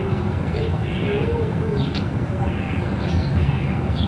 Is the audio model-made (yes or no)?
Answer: yes